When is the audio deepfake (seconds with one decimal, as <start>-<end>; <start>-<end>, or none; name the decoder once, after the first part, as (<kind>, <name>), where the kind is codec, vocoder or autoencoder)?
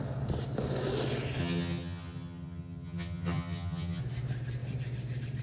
1.4-4.0 (vocoder, HiFi-GAN)